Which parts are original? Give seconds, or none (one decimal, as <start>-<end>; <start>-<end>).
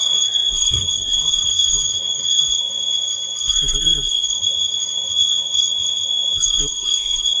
none